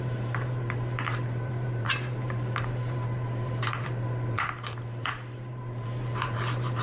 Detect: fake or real fake